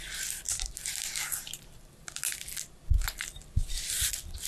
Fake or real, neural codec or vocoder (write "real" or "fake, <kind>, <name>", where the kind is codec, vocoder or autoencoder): real